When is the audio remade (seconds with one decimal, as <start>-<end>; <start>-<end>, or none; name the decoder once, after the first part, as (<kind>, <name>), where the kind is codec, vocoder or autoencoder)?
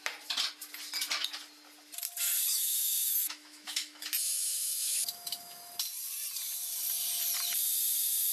2.5-5.7 (autoencoder, DAC-VAE)